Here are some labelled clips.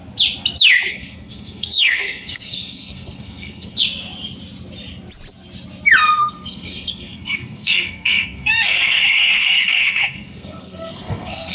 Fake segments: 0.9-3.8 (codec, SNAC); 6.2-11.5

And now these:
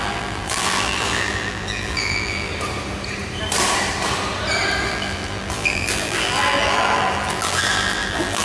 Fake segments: 0.0-2.5 (vocoder, BigVGAN v2); 4.9-8.4

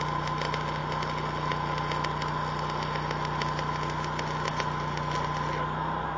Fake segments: none

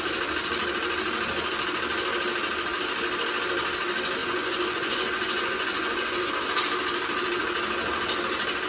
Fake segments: 4.2-6.3 (vocoder, Vocos)

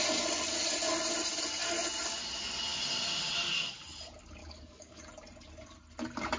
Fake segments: 4.4-5.0 (codec, DAC)

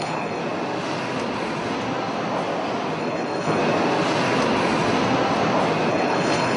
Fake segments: 0.0-0.4 (codec, HILCodec); 3.0-3.6; 5.9-6.6